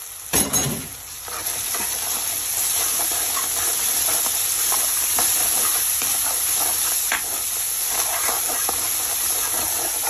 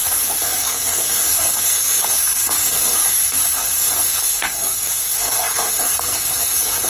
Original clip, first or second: first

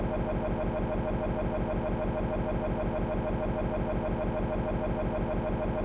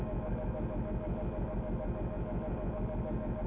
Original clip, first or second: first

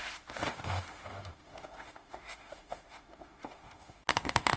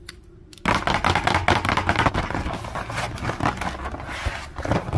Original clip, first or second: second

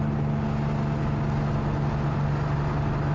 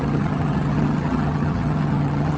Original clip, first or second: first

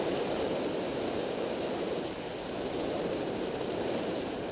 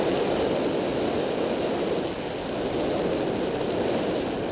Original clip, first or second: second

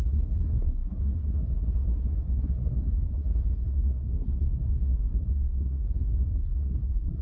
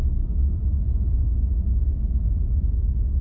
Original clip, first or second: second